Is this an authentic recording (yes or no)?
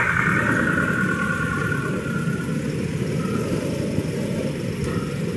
yes